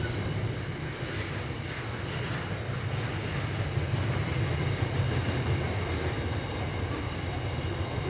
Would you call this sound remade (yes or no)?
no